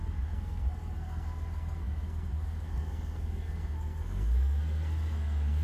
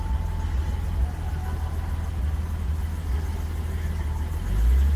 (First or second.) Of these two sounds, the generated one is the first